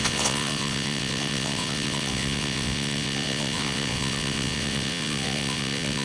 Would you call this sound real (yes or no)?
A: no